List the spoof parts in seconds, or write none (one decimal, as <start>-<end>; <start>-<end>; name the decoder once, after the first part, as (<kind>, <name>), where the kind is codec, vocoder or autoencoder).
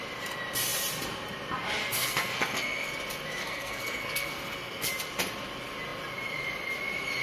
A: 1.8-2.9 (codec, SNAC); 3.4-4.9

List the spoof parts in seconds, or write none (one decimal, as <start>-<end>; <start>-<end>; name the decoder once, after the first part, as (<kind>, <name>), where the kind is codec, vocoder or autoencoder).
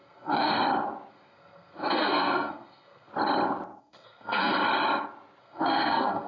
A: 0.0-0.5 (codec, SNAC); 1.1-3.1; 3.8-4.5; 5.4-6.3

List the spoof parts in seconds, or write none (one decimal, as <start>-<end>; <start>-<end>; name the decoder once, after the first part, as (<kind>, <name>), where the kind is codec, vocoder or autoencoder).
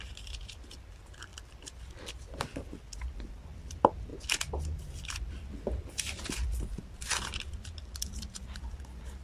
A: none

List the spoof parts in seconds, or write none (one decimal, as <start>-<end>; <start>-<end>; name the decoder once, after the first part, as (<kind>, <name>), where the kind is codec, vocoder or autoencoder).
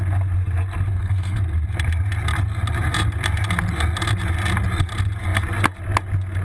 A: 0.9-1.4 (codec, SNAC)